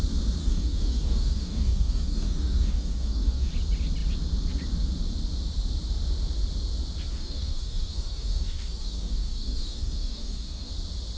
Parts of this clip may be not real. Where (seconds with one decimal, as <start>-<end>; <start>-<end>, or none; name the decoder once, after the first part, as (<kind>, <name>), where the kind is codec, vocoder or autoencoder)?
0.4-3.5 (codec, DAC); 7.1-10.7